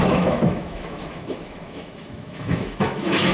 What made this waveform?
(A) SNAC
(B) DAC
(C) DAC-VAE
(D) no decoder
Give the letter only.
C